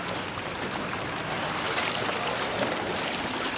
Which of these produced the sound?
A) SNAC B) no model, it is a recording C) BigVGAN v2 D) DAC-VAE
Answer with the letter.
B